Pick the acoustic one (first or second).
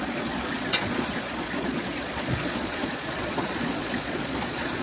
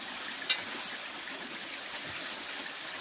second